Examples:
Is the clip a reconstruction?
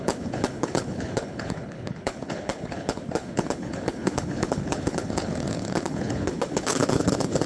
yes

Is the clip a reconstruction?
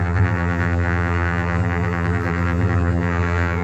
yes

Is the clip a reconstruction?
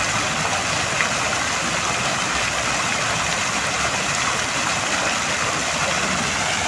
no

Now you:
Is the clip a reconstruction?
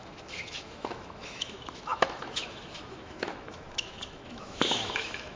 yes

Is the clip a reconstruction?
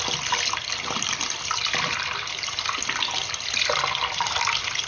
yes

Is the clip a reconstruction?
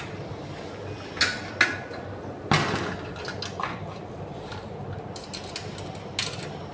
no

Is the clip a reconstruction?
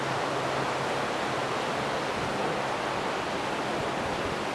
no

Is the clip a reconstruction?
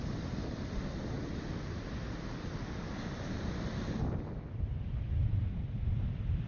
no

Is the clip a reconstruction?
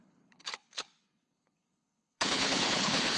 yes